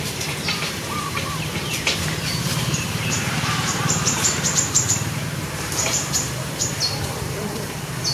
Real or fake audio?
fake